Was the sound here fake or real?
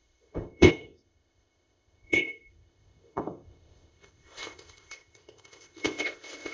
fake